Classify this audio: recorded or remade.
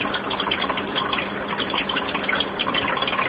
remade